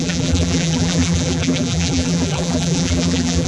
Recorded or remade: remade